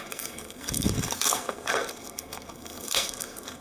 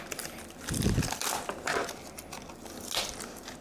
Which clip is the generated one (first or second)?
first